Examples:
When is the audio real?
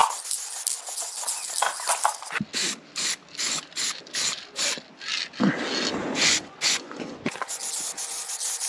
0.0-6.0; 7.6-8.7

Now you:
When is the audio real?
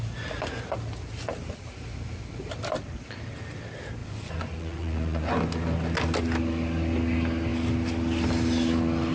0.0-4.0; 5.3-9.1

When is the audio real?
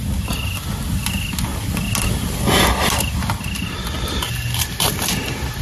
0.0-5.6